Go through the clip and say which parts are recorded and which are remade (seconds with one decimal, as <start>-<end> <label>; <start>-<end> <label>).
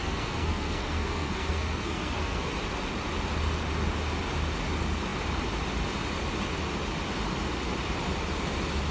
0.0-2.5 remade; 2.5-8.9 recorded